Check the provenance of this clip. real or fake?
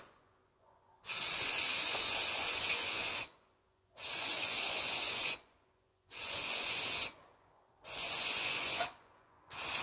fake